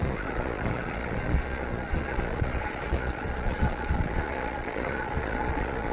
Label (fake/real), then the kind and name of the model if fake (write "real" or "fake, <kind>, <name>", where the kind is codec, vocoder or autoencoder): fake, vocoder, Vocos